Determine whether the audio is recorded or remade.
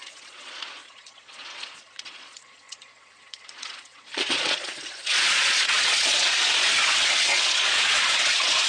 remade